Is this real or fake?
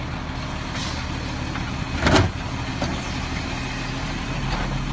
real